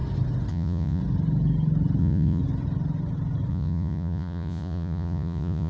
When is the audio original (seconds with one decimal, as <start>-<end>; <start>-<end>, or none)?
0.0-0.5; 1.0-2.0; 2.4-3.5